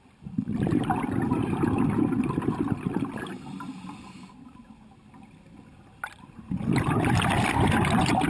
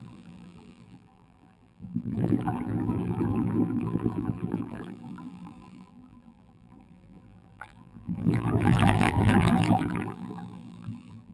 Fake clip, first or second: second